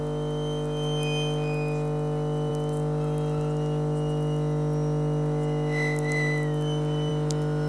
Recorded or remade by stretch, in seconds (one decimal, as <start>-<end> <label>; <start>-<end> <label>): 0.0-7.7 recorded